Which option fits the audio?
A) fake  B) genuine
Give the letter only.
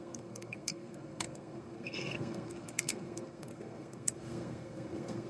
A